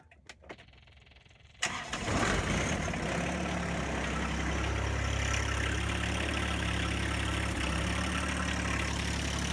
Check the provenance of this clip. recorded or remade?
recorded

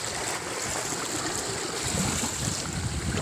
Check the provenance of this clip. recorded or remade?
recorded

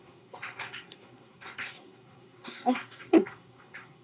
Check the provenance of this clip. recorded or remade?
remade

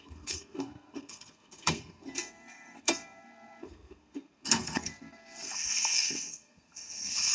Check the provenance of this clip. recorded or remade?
remade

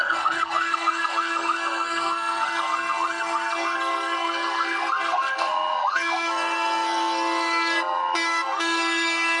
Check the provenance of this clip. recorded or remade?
remade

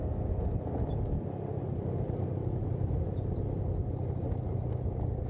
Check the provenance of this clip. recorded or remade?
recorded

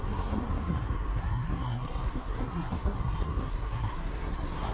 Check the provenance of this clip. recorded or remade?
remade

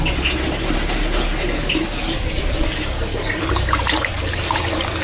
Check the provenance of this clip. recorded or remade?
recorded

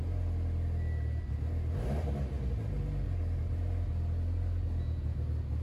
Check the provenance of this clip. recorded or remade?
recorded